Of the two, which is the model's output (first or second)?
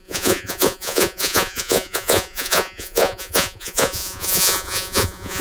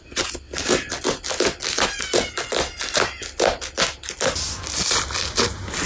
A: first